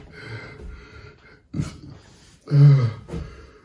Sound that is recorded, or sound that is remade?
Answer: recorded